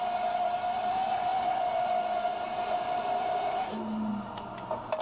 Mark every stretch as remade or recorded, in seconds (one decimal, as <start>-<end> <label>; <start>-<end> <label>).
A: 0.0-5.0 recorded

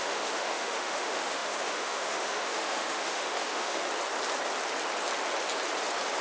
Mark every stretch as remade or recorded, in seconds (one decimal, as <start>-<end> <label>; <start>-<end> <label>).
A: 0.0-3.8 remade; 3.8-6.2 recorded

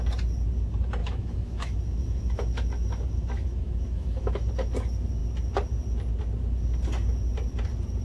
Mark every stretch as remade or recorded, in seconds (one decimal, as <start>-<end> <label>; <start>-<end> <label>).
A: 0.0-1.0 recorded; 1.0-4.5 remade; 4.5-8.0 recorded

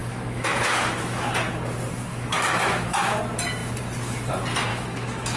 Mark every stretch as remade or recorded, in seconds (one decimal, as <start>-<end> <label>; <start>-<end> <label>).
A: 0.0-1.3 remade; 1.3-2.1 recorded; 2.1-3.2 remade; 3.2-4.7 recorded; 4.7-5.4 remade